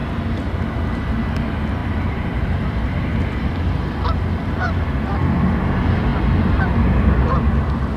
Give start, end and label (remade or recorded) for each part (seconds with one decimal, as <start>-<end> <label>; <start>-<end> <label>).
0.0-1.8 recorded; 1.8-3.0 remade; 3.0-8.0 recorded